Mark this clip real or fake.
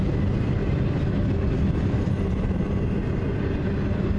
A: real